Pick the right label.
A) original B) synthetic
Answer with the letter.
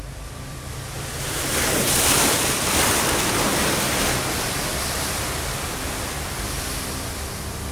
B